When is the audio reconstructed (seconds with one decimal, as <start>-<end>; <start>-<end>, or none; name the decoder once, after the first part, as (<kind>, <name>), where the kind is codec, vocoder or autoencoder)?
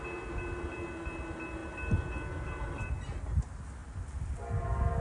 none